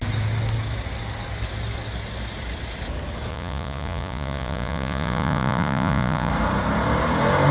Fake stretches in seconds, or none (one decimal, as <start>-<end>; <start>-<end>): 3.3-6.3